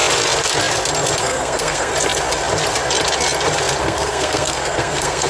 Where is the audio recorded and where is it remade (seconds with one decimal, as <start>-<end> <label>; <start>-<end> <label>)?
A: 0.0-1.2 recorded; 1.2-1.9 remade; 1.9-3.8 recorded; 3.8-5.3 remade